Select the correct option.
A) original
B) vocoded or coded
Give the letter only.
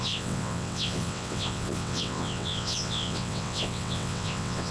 B